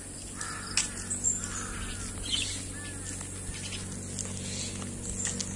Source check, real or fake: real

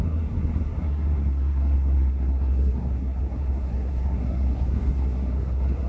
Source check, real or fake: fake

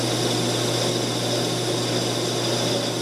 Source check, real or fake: real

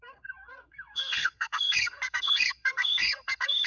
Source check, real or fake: fake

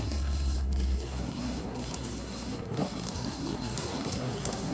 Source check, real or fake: fake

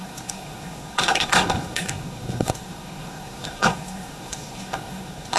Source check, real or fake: fake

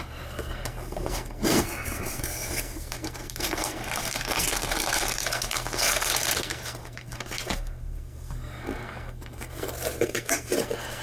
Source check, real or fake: fake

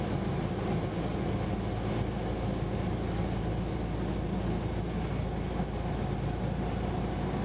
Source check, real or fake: real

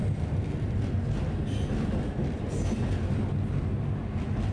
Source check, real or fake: real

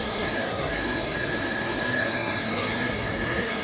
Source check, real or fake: fake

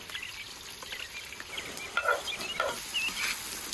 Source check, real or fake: real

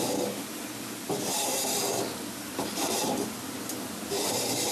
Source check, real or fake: real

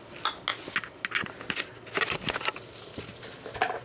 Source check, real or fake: real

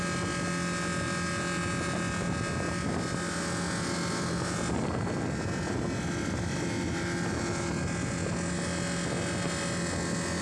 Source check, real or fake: real